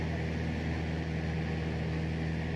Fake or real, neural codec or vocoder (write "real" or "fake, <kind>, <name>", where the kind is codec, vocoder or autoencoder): real